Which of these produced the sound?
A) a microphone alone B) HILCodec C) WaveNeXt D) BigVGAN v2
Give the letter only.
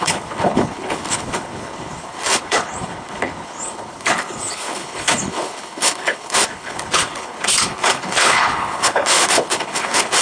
B